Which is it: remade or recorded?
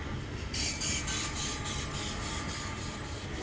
recorded